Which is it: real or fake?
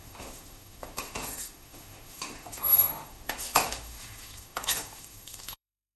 fake